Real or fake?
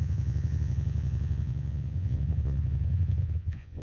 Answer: fake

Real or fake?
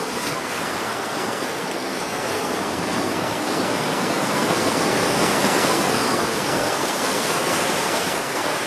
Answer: fake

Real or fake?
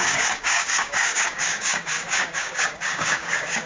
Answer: fake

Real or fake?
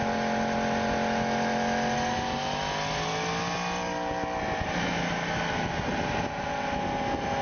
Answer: real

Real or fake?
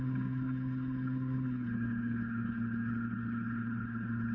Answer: fake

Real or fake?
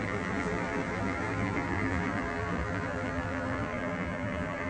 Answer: fake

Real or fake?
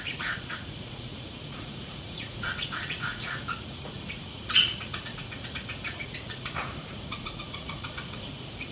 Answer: fake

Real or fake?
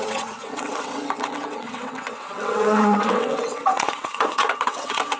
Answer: fake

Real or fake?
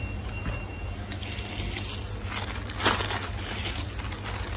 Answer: real